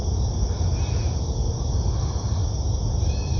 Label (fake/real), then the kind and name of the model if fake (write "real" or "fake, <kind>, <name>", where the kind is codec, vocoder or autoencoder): real